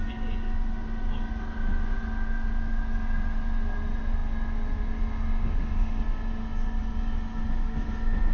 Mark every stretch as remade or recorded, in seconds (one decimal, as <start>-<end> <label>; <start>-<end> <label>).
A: 0.0-8.3 recorded